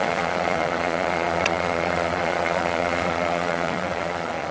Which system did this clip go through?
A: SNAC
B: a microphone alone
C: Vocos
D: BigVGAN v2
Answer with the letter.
C